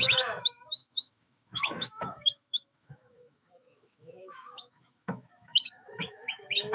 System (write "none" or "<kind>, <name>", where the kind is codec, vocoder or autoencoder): autoencoder, DAC-VAE